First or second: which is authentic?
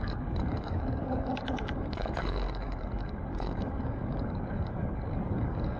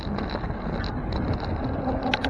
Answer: second